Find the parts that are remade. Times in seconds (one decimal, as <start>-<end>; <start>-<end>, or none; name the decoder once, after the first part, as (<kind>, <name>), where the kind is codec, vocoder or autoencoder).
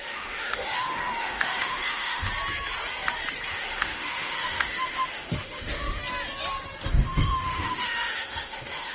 0.0-2.3 (autoencoder, DAC-VAE); 3.5-6.0; 6.9-8.9